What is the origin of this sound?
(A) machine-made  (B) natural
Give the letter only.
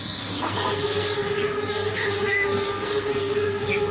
A